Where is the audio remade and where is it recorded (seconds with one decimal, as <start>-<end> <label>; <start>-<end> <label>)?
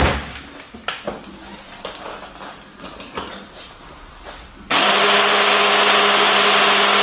0.0-7.0 recorded